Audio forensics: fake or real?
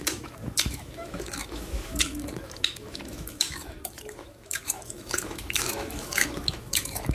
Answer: fake